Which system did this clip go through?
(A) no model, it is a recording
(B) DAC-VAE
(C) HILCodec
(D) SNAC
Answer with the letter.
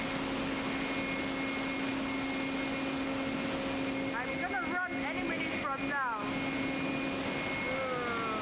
A